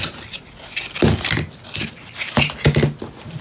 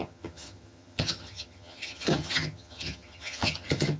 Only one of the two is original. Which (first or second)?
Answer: first